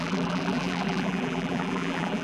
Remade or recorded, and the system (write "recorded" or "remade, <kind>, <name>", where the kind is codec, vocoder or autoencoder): remade, vocoder, BigVGAN v2